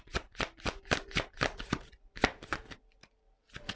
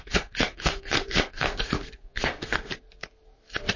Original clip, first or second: first